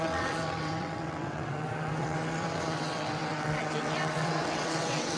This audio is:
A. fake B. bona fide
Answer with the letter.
A